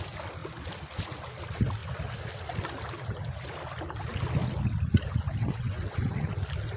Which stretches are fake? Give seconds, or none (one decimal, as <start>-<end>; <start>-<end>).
5.4-6.3